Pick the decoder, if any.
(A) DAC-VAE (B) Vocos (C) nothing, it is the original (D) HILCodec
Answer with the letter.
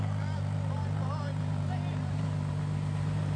C